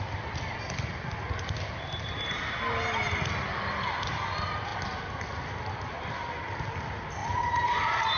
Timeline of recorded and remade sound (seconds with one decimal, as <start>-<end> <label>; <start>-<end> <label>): 0.0-7.2 recorded; 7.2-8.2 remade